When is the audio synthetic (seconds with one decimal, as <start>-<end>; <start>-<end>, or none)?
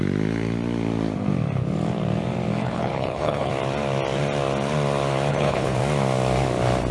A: 2.6-3.5; 5.3-5.8